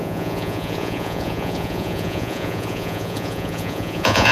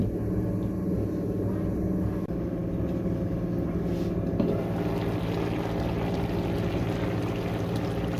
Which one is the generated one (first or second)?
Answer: first